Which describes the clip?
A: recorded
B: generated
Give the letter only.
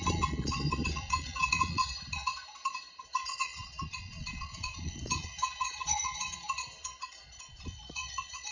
B